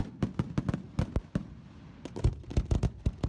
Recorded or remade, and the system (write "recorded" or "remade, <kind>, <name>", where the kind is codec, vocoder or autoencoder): recorded